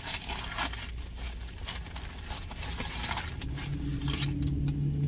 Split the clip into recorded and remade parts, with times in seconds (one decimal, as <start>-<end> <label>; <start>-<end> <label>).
0.0-5.1 recorded